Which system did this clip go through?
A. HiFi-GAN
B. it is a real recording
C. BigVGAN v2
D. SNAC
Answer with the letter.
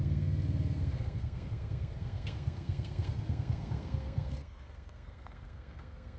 D